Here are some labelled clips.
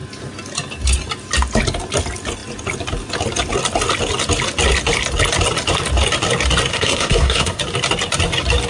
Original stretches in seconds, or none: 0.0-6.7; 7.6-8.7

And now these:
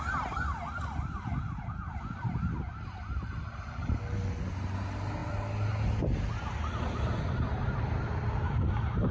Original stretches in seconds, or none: 0.0-9.1

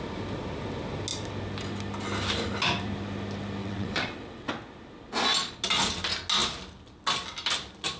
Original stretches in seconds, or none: 0.0-3.6; 4.5-8.0